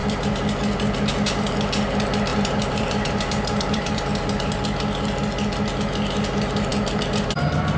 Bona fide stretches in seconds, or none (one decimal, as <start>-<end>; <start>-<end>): 0.0-2.3; 4.6-7.8